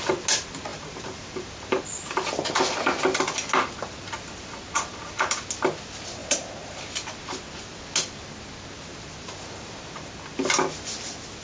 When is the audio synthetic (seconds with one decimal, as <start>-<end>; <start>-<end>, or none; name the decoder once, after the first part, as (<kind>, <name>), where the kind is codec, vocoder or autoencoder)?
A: 0.7-1.8 (vocoder, BigVGAN v2); 6.2-6.8; 8.9-10.1